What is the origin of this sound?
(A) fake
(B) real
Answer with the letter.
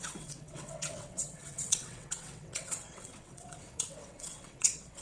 A